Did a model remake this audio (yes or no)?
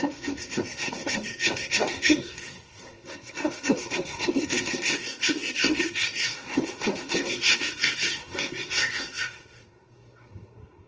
yes